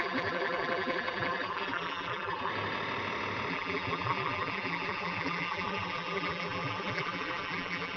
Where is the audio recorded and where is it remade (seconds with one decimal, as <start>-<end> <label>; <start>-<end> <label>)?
0.0-2.5 remade; 2.5-3.5 recorded; 3.5-8.0 remade